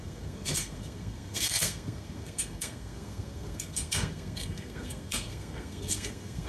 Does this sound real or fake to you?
fake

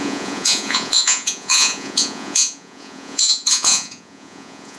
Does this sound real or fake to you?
fake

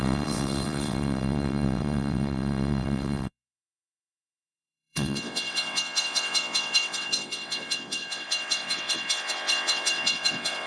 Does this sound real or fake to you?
fake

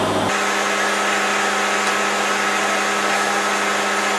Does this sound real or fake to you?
real